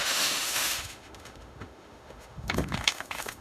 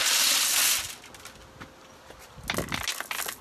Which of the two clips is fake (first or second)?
first